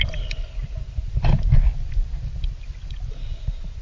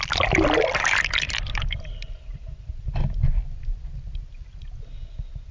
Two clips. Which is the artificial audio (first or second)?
first